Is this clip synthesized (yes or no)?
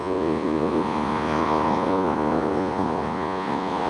yes